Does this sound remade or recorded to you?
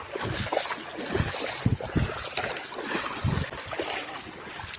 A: recorded